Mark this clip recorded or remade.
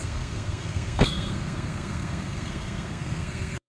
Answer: remade